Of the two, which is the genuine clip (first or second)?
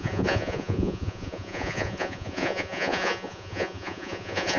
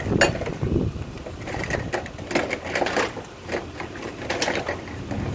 second